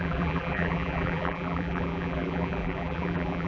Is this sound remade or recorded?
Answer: remade